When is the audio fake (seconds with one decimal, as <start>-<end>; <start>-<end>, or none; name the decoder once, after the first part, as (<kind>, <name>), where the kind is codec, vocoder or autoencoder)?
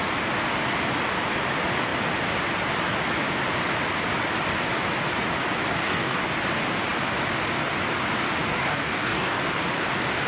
5.7-6.2 (codec, DAC); 8.5-9.4